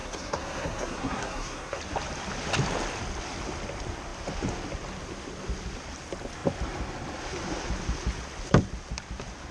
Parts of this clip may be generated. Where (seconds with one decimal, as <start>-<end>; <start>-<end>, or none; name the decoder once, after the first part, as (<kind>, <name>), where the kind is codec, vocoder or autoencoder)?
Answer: 0.0-1.8 (codec, SNAC)